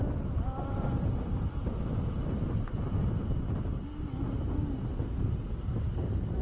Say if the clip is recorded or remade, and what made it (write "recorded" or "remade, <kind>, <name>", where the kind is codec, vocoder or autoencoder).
recorded